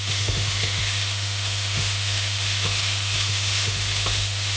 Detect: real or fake fake